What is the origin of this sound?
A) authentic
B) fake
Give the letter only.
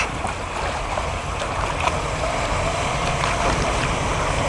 A